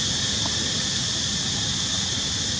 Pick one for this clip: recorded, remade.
recorded